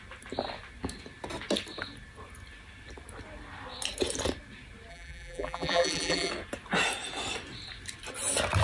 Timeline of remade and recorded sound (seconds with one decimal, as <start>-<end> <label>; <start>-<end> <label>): 0.0-4.9 recorded; 4.9-6.3 remade; 6.3-8.6 recorded